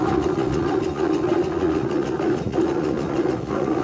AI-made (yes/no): yes